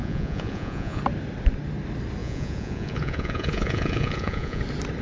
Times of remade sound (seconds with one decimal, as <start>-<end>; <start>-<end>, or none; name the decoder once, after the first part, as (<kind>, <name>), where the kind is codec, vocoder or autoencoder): 0.0-1.0 (vocoder, Vocos); 2.2-4.6